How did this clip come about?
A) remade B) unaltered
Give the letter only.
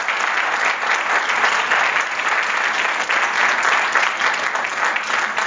B